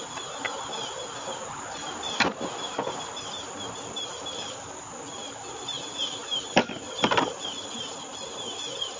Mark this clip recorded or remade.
recorded